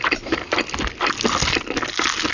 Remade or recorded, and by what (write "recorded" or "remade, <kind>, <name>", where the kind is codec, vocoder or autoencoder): recorded